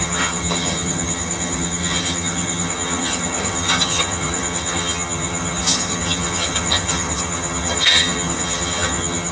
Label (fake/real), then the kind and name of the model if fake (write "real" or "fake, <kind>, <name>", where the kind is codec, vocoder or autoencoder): fake, vocoder, HiFi-GAN